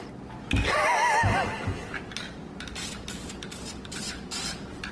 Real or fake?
real